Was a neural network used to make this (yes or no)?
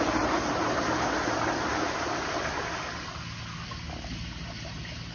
no